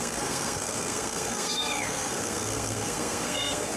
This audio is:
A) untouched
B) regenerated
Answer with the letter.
B